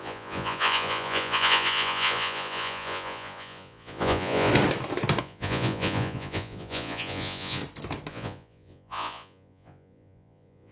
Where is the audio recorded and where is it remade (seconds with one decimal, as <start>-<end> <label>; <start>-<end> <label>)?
0.0-4.5 remade; 4.5-5.2 recorded; 5.2-7.6 remade; 7.6-8.1 recorded; 8.1-10.7 remade